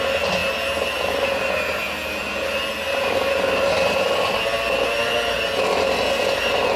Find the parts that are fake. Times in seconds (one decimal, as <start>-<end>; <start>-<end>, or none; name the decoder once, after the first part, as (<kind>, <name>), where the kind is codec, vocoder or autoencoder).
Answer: none